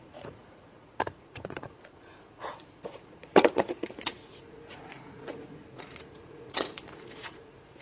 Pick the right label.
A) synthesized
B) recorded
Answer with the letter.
A